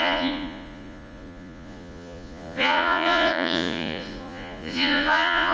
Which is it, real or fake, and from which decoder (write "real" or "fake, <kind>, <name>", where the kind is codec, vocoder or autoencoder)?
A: fake, vocoder, Vocos